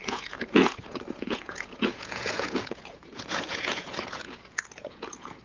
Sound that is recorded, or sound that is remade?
remade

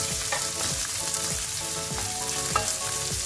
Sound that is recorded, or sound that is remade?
recorded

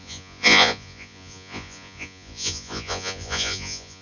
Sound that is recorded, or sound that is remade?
remade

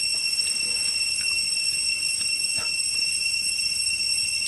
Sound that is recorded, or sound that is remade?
recorded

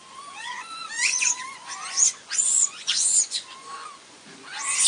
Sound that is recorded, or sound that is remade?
remade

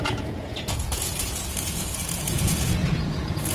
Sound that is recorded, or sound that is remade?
remade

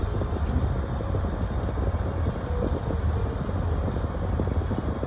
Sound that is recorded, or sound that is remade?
recorded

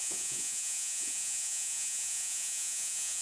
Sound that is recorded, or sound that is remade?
remade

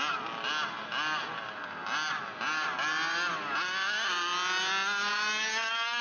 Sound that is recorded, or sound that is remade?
recorded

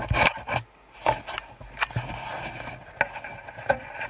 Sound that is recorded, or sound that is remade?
recorded